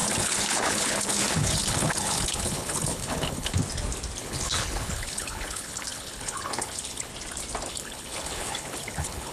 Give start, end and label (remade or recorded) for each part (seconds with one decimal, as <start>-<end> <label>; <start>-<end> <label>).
0.0-3.6 remade; 3.6-4.2 recorded; 4.2-7.1 remade; 7.1-7.7 recorded; 7.7-9.3 remade